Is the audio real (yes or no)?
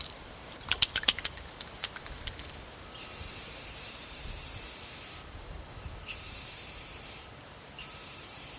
no